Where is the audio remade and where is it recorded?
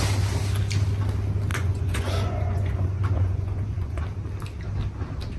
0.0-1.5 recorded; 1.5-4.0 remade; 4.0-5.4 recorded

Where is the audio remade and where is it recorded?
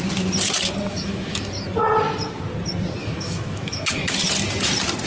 0.0-0.9 recorded; 0.9-1.5 remade; 1.5-3.0 recorded; 3.0-4.1 remade; 4.1-5.1 recorded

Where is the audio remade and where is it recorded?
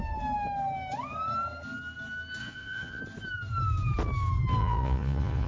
0.0-2.4 recorded; 2.4-3.0 remade; 3.0-4.6 recorded; 4.6-5.5 remade